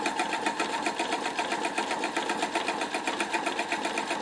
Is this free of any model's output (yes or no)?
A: yes